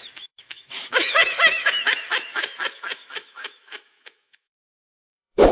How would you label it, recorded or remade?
remade